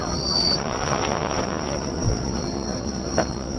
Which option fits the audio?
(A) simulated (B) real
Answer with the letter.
A